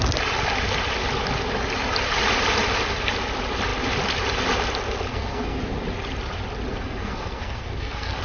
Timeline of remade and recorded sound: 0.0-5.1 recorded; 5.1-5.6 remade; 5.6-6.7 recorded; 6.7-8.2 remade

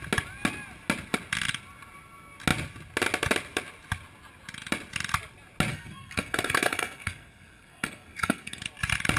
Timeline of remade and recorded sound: 0.0-5.7 recorded; 5.7-8.6 remade; 8.6-9.2 recorded